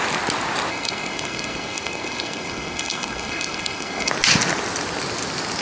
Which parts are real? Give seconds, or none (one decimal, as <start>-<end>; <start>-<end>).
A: 0.0-0.7; 4.1-5.6